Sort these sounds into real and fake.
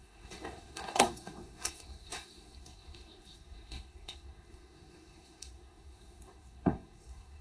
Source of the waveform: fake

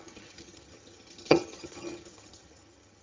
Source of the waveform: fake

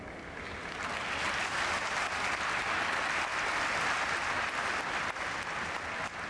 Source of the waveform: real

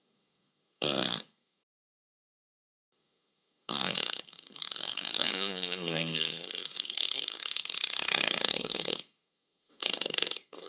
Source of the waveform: fake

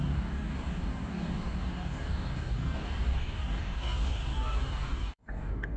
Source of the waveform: fake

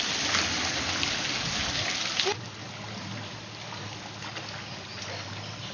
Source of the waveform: real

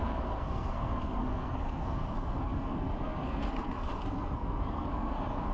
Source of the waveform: fake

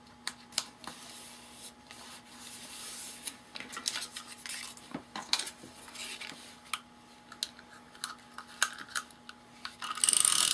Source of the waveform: real